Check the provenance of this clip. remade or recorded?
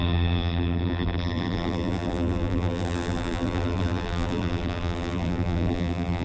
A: remade